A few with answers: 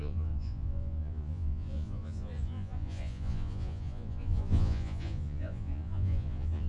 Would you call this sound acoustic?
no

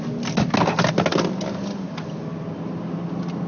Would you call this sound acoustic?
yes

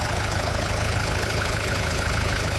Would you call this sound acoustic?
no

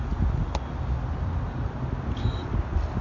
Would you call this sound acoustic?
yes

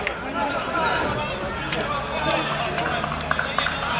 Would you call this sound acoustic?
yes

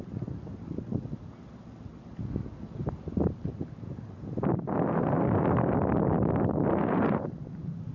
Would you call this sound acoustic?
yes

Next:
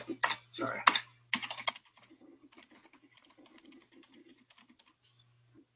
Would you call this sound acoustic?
yes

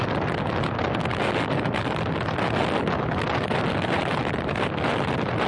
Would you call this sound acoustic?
yes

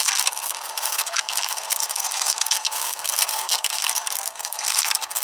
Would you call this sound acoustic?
no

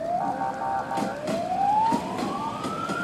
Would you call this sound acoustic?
no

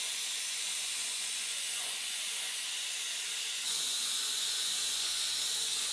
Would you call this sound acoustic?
no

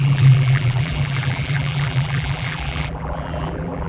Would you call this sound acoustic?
no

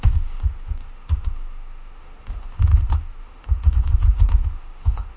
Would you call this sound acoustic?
no